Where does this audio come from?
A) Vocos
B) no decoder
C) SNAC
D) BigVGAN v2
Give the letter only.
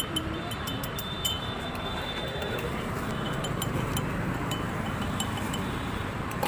D